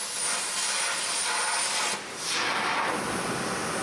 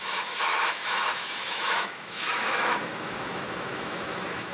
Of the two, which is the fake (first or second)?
second